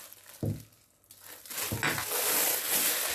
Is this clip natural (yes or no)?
yes